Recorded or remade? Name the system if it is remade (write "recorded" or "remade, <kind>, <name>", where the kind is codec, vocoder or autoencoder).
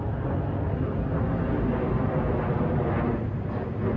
recorded